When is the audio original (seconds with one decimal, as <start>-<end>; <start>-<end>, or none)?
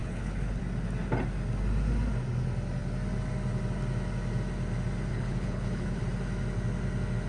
0.6-5.1; 6.0-7.3